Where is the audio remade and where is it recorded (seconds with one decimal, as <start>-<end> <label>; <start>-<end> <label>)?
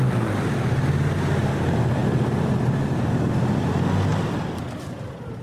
0.0-5.4 recorded